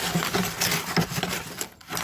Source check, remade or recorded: recorded